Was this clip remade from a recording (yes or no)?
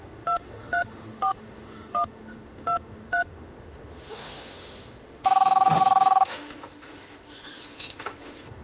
yes